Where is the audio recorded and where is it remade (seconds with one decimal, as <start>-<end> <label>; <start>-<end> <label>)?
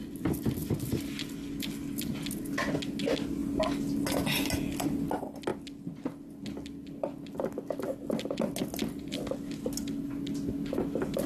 0.0-11.3 recorded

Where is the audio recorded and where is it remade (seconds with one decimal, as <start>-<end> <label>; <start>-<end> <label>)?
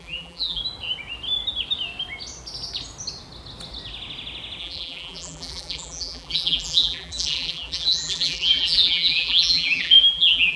0.0-0.6 remade; 0.6-4.6 recorded; 4.6-10.6 remade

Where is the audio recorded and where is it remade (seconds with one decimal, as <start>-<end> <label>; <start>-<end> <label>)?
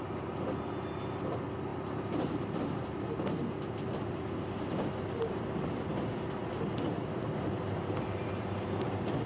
0.0-1.7 recorded; 1.7-2.6 remade; 2.6-9.3 recorded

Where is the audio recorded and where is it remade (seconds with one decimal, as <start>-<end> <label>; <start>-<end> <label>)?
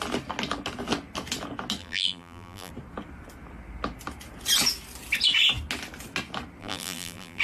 0.0-1.8 recorded; 1.8-2.7 remade; 2.7-6.6 recorded; 6.6-7.4 remade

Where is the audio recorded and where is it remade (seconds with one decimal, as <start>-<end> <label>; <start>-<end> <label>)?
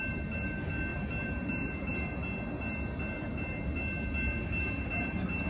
0.0-0.9 recorded; 0.9-2.2 remade; 2.2-5.5 recorded